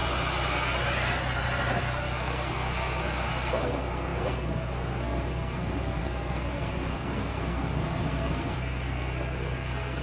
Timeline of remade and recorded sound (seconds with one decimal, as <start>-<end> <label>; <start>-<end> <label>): 0.0-1.8 recorded; 1.8-10.0 remade